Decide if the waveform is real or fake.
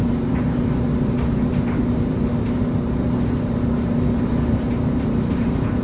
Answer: fake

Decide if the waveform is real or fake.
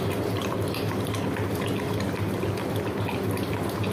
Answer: real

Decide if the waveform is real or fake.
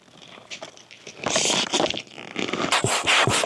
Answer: real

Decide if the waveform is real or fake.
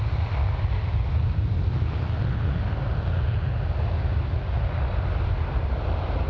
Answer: real